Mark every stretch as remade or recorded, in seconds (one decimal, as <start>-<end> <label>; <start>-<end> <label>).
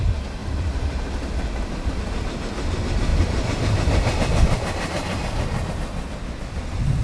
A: 0.0-0.4 recorded; 0.4-1.0 remade; 1.0-3.1 recorded; 3.1-5.7 remade; 5.7-7.0 recorded